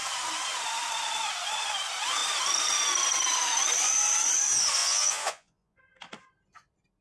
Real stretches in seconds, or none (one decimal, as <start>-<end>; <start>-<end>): 0.0-4.8; 5.8-7.0